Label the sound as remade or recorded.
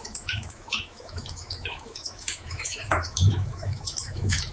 remade